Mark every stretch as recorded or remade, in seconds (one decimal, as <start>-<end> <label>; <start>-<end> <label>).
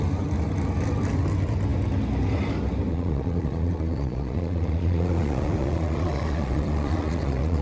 0.0-2.9 recorded; 2.9-7.6 remade